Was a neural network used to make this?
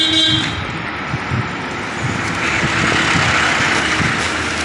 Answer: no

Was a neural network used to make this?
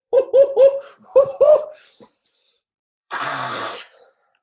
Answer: yes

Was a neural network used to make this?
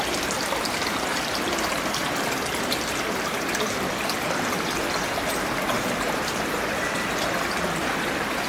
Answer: yes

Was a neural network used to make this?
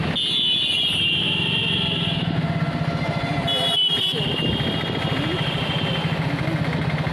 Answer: no